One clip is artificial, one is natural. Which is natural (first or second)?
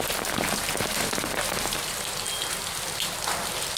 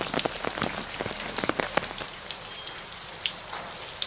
first